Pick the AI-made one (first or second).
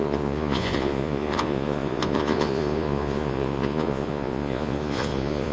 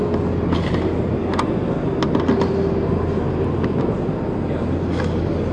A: first